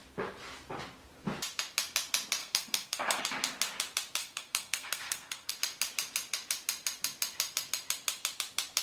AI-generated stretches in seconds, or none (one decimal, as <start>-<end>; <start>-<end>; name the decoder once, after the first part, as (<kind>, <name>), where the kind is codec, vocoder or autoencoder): 2.4-3.2 (codec, SNAC); 4.2-5.5